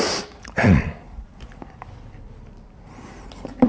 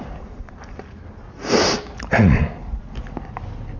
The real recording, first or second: second